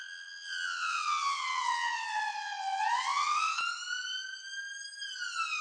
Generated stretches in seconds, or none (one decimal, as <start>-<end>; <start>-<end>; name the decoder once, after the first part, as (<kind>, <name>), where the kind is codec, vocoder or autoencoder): 0.0-3.6 (vocoder, WaveNeXt)

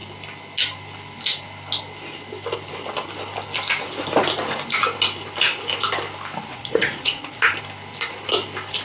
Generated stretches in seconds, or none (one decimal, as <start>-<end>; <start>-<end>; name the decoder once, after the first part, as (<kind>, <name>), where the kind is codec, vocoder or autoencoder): 6.5-7.5 (vocoder, Vocos)

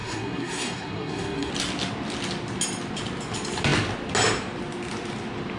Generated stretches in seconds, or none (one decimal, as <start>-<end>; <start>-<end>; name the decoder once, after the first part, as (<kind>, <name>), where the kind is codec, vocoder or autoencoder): 0.0-1.5 (codec, SNAC)

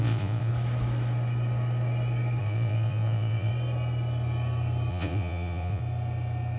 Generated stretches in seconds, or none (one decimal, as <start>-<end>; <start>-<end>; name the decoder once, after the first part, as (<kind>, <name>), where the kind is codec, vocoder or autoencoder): 0.0-0.5 (vocoder, Vocos); 2.4-3.5; 4.9-5.8

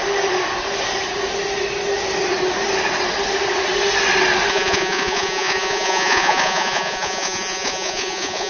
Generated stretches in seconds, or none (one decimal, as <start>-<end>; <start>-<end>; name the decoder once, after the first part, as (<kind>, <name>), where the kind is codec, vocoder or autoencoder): 4.5-8.5 (vocoder, Vocos)

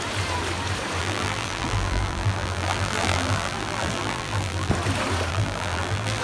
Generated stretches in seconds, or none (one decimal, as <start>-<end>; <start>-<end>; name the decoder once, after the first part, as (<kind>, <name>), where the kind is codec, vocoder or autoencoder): 1.0-4.7 (vocoder, BigVGAN v2); 5.3-6.2

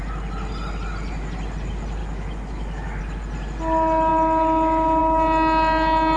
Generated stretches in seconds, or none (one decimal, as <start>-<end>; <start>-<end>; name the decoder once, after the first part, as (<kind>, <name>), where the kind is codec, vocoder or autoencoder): 2.0-3.0 (autoencoder, DAC-VAE)

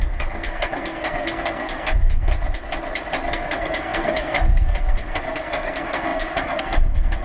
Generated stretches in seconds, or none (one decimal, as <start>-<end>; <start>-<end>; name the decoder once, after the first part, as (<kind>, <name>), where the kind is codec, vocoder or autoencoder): 0.0-2.3 (codec, SNAC); 3.3-7.2